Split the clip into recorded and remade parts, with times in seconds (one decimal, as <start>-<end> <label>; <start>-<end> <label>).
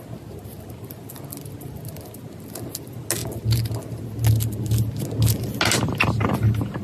0.0-6.8 recorded